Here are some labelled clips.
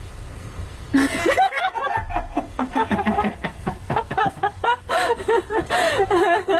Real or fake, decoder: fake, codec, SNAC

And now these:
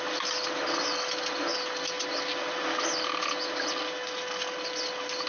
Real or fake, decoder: real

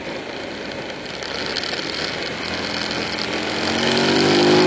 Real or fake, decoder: real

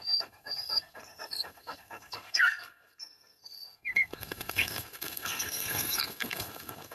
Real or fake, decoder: fake, codec, SNAC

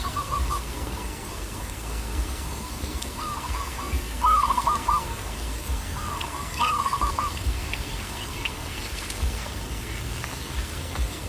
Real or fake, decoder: fake, codec, SNAC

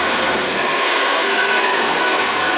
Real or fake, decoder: fake, codec, SNAC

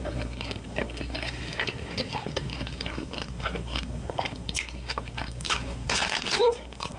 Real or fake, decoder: fake, codec, SNAC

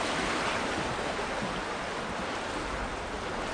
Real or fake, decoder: real